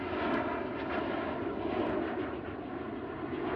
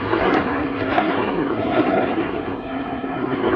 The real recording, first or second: first